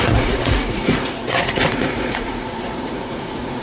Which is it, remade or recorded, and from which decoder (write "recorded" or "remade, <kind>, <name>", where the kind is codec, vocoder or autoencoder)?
remade, vocoder, Vocos